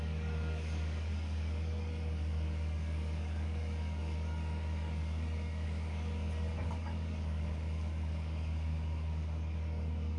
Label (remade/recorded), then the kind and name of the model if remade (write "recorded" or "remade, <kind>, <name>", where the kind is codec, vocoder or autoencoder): remade, codec, DAC